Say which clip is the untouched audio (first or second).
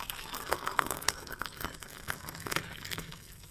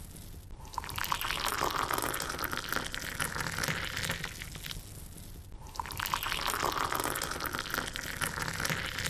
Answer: second